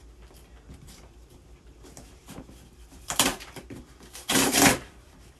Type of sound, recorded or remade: remade